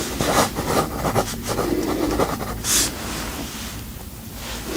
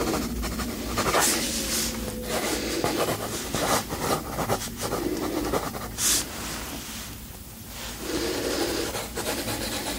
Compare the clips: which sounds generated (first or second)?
second